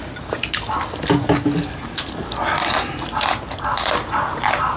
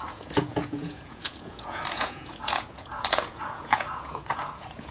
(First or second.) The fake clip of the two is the second